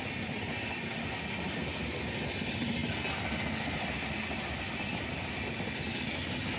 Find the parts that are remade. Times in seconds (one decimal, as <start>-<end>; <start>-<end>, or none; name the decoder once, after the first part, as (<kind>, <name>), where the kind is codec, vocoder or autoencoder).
none